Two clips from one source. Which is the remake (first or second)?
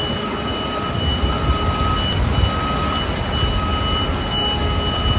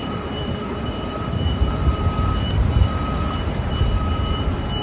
second